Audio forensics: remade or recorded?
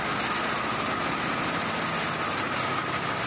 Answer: recorded